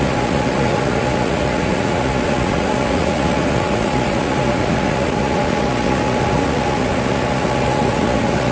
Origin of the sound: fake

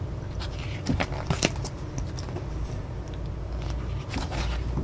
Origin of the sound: real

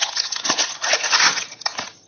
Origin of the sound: fake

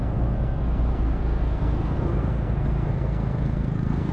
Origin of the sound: fake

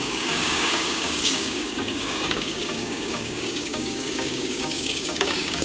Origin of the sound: fake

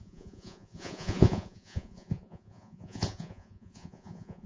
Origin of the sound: fake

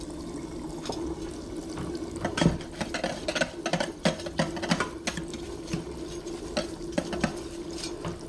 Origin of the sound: real